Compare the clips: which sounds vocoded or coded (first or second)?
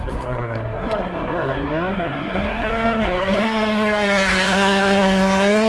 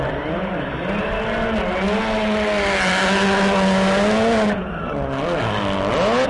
first